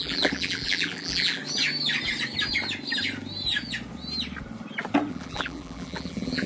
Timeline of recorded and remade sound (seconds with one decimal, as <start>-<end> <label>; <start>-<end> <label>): 0.0-1.4 remade; 1.4-5.1 recorded; 5.1-6.5 remade